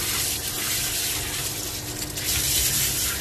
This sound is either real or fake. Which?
real